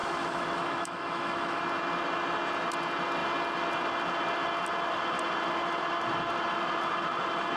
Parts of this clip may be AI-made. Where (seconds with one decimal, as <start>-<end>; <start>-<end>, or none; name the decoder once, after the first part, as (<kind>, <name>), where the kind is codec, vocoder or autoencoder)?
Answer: 0.0-1.6 (autoencoder, DAC-VAE)